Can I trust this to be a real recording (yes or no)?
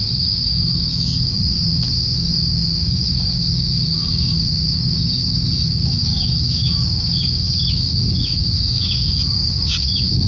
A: no